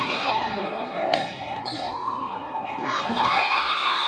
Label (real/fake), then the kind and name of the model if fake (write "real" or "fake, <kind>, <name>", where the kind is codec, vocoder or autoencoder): fake, codec, SNAC